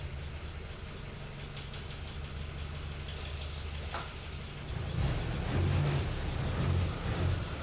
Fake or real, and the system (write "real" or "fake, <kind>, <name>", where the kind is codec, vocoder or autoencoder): real